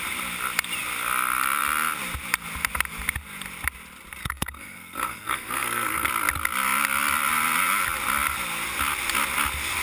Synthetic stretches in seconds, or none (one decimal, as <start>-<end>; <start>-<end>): 4.2-6.1